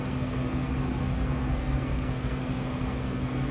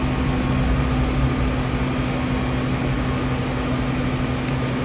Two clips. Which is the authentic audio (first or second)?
second